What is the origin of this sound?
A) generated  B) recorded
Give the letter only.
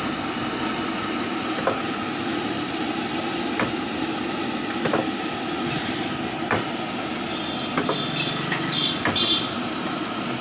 B